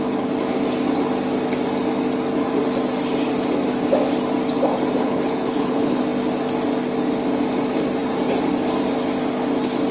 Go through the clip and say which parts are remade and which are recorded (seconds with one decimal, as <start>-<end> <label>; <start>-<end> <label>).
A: 0.0-5.0 recorded; 5.0-6.0 remade; 6.0-9.9 recorded